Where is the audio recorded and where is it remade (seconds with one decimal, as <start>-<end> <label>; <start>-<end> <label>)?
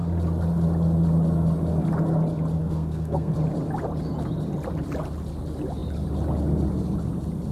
0.0-2.6 recorded; 2.6-3.3 remade; 3.3-7.5 recorded